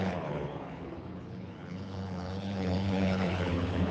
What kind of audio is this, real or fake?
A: fake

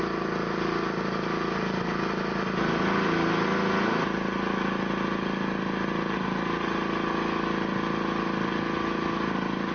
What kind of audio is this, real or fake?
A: real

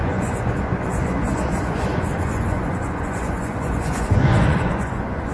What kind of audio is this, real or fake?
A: fake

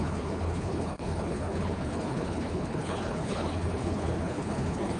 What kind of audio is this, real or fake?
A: fake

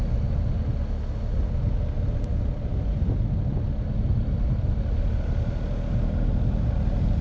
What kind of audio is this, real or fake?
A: real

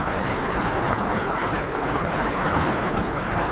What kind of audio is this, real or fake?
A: fake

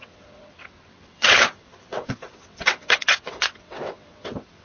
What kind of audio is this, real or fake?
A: fake